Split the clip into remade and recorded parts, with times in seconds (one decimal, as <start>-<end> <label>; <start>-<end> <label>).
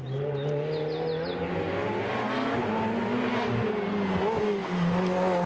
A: 0.0-5.5 recorded